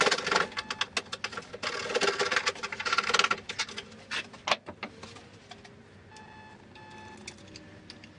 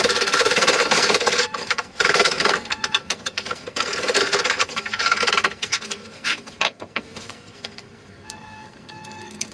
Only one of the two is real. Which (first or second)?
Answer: first